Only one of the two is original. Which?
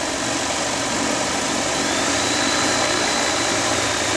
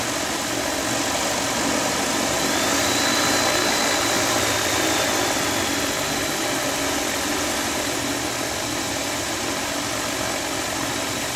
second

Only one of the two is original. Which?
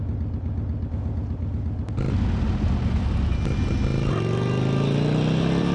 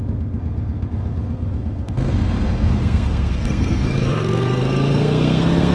first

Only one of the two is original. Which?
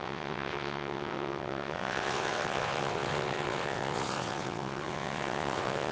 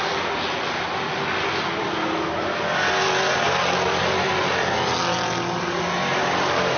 second